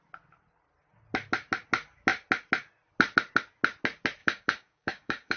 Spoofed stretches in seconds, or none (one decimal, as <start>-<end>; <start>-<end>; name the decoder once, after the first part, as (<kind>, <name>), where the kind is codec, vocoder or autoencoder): 4.2-5.4 (codec, DAC)